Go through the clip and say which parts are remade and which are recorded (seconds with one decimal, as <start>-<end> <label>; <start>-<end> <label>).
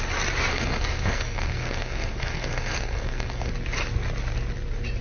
0.0-0.5 recorded; 0.5-3.5 remade; 3.5-5.0 recorded